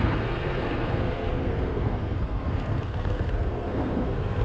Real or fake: fake